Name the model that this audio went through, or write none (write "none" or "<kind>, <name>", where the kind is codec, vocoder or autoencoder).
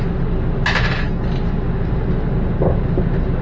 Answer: none